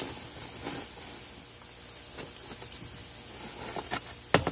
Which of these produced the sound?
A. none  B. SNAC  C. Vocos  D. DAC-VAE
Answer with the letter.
A